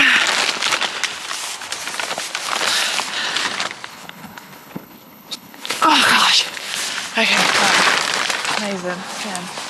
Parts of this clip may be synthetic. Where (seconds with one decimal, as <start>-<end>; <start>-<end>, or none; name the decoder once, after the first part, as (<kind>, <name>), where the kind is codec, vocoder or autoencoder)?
3.9-6.7 (codec, HILCodec)